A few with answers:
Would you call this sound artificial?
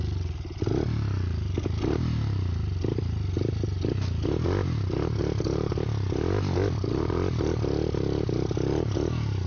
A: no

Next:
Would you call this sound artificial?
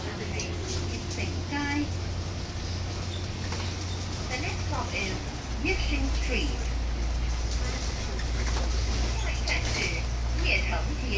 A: no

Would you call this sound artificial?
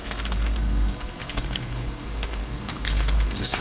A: yes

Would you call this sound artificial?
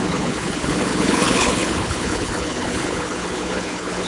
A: yes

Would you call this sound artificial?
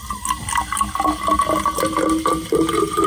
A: no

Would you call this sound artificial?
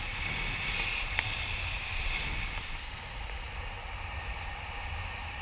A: no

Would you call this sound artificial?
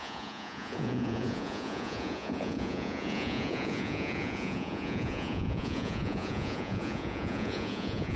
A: yes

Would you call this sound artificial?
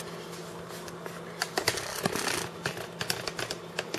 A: no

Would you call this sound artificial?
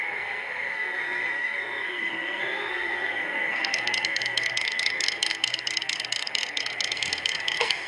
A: yes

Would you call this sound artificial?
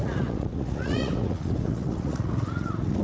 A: yes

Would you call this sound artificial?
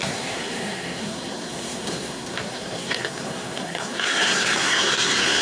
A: yes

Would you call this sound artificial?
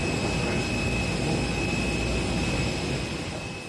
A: no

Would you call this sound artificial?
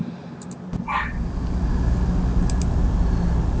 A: no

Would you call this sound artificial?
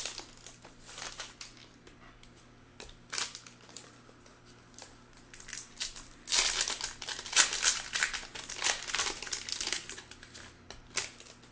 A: no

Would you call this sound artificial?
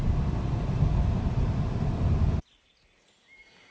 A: no